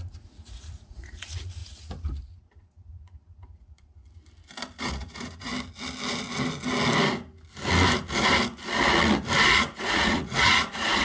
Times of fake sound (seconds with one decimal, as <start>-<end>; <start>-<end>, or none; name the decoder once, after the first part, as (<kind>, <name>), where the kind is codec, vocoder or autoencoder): 0.0-4.0 (vocoder, Vocos); 4.8-5.5; 9.5-11.0